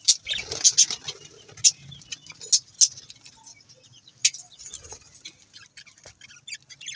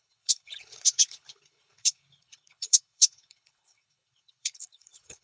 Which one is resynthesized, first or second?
second